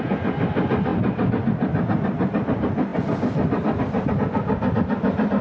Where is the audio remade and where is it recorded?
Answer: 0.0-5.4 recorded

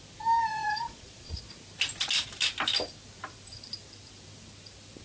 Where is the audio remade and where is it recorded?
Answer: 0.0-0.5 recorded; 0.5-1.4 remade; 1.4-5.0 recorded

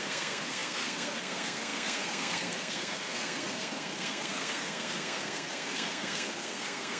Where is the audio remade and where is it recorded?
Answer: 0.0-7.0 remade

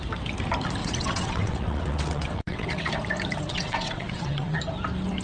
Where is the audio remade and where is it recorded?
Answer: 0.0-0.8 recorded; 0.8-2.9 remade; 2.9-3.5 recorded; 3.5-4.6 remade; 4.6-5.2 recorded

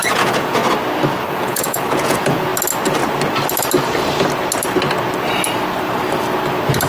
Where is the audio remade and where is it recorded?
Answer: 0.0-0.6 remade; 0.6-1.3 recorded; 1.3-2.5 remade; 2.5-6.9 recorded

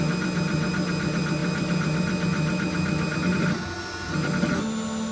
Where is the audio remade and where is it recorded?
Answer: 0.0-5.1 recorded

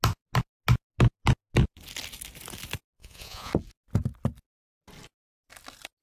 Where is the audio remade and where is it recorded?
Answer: 0.0-3.0 recorded; 3.0-3.5 remade; 3.5-6.0 recorded